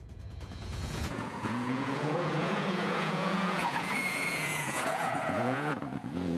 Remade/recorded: remade